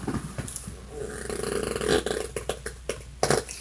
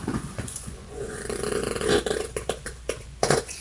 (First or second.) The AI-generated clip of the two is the second